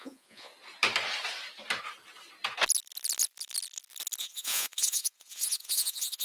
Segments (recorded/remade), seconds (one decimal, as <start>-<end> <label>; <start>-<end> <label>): 0.0-0.5 remade; 0.5-4.2 recorded; 4.2-6.2 remade